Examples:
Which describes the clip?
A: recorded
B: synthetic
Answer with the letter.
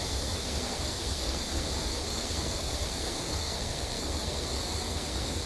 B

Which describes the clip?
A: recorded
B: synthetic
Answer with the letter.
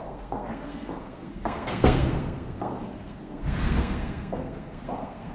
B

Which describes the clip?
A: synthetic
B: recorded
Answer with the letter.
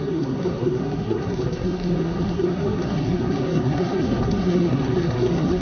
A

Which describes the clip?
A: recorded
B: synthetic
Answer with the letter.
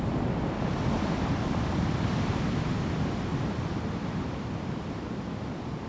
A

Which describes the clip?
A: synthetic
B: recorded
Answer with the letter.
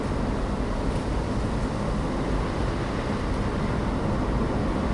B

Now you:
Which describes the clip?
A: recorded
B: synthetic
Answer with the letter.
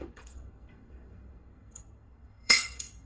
B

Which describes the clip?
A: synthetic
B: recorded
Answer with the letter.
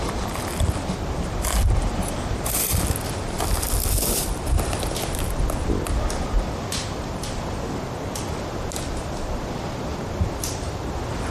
B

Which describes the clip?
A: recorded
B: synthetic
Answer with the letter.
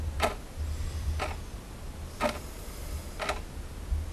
A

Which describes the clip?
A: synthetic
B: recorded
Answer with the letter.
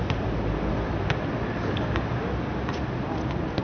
B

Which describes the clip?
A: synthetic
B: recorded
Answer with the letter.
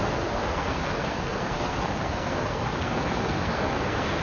A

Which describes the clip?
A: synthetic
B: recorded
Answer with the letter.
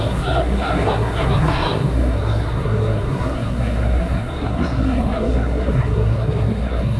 A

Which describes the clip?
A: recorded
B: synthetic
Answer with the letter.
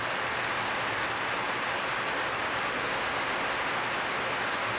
A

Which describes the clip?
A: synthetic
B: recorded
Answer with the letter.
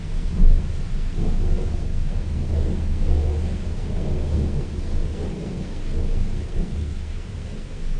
A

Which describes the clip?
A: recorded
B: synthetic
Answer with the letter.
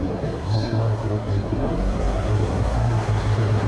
B